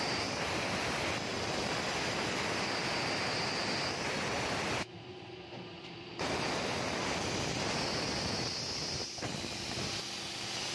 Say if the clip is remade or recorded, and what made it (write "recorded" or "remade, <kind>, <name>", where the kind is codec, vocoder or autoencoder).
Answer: recorded